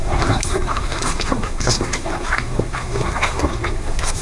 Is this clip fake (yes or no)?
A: yes